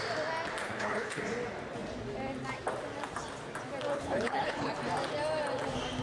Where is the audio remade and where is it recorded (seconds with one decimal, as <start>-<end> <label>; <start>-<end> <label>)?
0.0-0.6 recorded; 0.6-1.2 remade; 1.2-3.9 recorded; 3.9-4.7 remade; 4.7-6.0 recorded